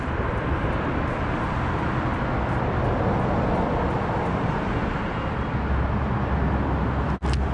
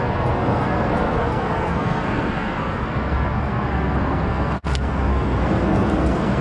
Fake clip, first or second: second